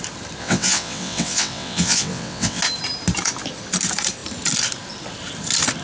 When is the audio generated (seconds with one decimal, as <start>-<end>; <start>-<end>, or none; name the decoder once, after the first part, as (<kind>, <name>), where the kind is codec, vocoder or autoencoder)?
0.4-2.6 (vocoder, WaveNeXt)